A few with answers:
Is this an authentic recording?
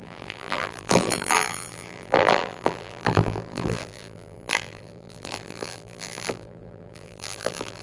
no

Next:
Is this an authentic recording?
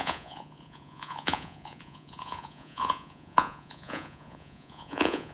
no